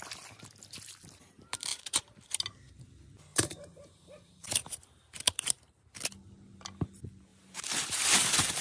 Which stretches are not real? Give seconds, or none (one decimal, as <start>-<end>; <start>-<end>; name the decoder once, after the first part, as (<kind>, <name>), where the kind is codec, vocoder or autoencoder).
1.7-2.4 (vocoder, BigVGAN v2); 3.3-4.8; 7.3-8.6